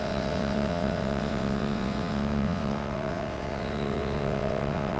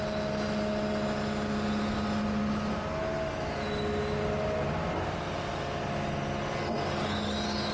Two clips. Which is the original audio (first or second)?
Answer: second